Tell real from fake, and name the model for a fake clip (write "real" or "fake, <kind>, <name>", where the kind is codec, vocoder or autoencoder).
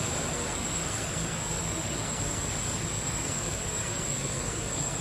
fake, codec, SNAC